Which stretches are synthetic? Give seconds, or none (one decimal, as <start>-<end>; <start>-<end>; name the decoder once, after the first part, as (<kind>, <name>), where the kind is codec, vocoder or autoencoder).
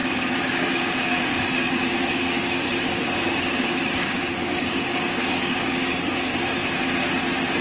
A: 0.5-6.3 (codec, DAC)